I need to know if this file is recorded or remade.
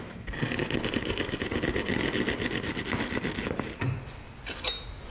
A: recorded